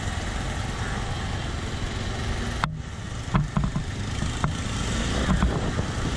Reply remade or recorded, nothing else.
recorded